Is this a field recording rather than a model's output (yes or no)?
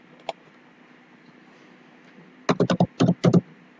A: yes